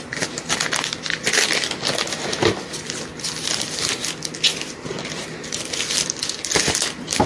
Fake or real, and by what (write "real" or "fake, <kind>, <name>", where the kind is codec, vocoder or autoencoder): real